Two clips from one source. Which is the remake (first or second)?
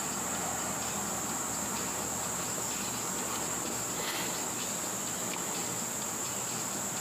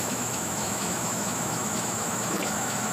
second